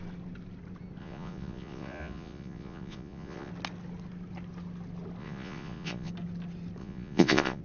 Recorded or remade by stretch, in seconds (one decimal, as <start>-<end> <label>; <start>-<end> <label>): 0.0-1.0 recorded; 1.0-3.5 remade; 3.5-5.2 recorded; 5.2-6.1 remade; 6.1-6.8 recorded; 6.8-7.6 remade